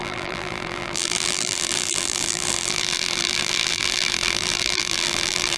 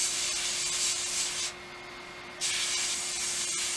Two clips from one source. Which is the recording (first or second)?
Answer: second